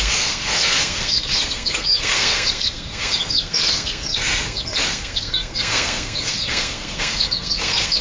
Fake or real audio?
fake